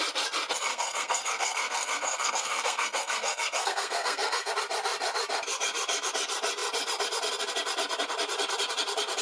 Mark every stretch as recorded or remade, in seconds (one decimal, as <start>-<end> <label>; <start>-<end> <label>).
0.0-0.7 recorded; 0.7-4.5 remade; 4.5-9.2 recorded